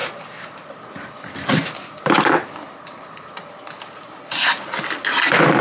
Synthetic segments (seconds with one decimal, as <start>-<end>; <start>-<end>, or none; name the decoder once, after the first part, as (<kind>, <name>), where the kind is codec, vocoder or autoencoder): none